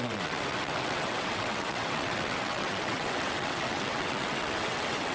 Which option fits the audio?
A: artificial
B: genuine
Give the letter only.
A